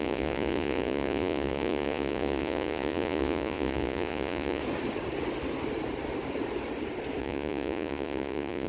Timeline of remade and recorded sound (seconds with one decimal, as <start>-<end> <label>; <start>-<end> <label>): 0.0-4.6 remade; 4.6-7.2 recorded; 7.2-8.7 remade